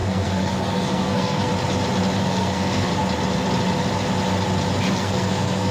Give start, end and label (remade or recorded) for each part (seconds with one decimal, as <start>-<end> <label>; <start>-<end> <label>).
0.0-1.5 remade; 1.5-2.2 recorded; 2.2-2.9 remade; 2.9-4.9 recorded; 4.9-5.7 remade